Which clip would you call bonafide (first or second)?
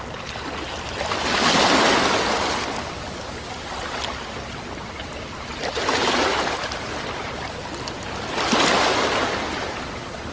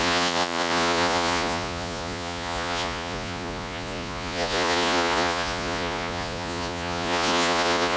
first